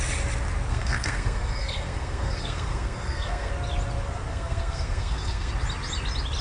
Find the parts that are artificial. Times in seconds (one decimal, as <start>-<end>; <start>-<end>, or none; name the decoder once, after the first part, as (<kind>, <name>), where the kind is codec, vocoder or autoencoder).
0.7-3.5 (codec, SNAC); 4.3-5.5